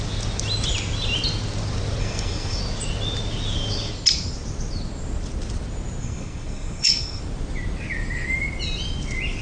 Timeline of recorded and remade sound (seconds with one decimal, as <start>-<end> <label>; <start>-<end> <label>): 0.0-2.0 recorded; 2.0-2.6 remade; 2.6-6.0 recorded; 6.0-7.2 remade; 7.2-9.4 recorded

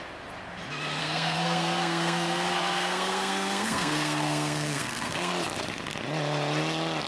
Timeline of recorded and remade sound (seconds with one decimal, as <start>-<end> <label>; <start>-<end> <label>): 0.0-1.0 recorded; 1.0-5.3 remade; 5.3-7.1 recorded

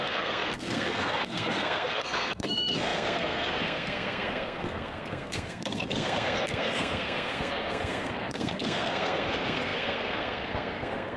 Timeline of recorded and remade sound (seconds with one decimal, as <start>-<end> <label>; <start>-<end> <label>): 0.0-11.2 remade

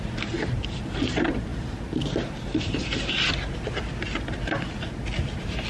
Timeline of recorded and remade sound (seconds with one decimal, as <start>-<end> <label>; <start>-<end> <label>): 0.0-5.7 recorded

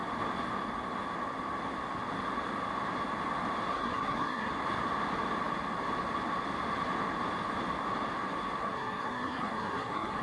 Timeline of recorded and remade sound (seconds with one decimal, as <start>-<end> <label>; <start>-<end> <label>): 0.0-3.7 recorded; 3.7-4.5 remade; 4.5-8.6 recorded; 8.6-10.2 remade